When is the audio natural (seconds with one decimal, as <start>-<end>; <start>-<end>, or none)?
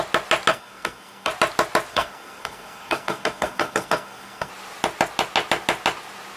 0.0-0.5; 1.3-1.9; 4.5-6.4